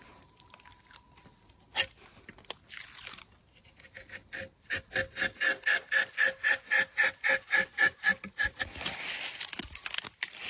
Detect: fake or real real